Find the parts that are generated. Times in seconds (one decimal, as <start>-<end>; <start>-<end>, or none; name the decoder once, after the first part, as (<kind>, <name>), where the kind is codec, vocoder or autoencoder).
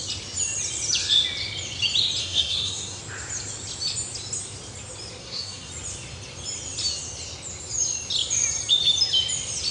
2.2-3.0 (codec, SNAC); 5.2-5.7